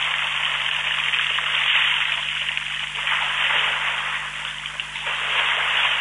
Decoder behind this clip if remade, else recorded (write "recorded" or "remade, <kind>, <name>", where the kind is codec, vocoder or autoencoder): recorded